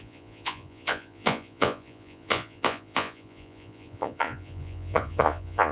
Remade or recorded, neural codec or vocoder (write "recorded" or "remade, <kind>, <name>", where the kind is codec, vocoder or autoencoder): remade, vocoder, Vocos